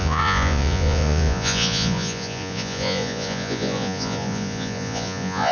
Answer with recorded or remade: remade